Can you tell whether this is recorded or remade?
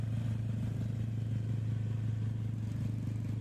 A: recorded